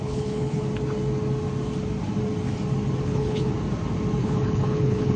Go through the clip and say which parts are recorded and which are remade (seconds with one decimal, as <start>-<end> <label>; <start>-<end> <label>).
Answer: 0.0-0.6 remade; 0.6-3.0 recorded; 3.0-3.5 remade; 3.5-4.2 recorded; 4.2-5.2 remade